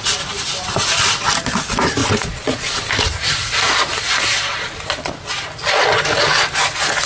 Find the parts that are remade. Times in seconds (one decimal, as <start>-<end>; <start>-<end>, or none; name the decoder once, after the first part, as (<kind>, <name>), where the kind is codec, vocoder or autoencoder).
2.0-2.8 (vocoder, Vocos)